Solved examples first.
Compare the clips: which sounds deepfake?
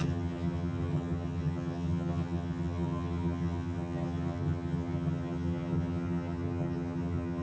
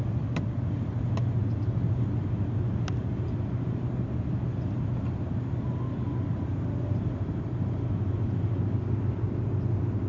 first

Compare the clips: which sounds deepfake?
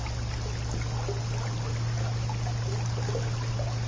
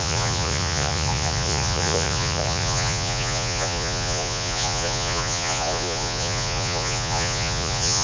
second